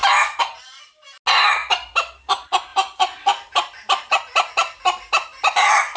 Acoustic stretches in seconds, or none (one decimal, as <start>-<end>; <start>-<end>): 0.8-1.6; 2.2-2.7